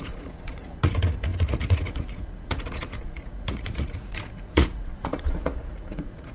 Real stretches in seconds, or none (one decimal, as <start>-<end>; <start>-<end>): none